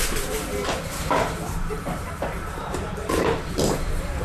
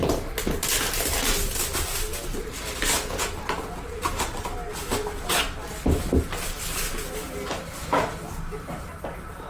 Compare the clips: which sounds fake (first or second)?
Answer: first